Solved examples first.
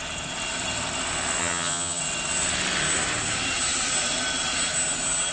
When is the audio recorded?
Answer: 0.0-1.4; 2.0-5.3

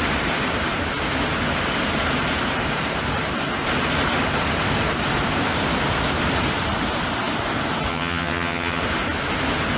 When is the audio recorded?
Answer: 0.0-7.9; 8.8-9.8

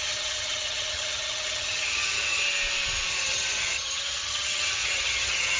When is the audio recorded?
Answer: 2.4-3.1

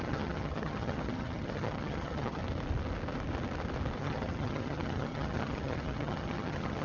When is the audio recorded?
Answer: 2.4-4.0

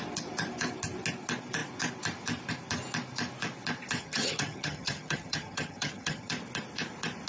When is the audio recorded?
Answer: 0.0-4.0; 6.3-7.3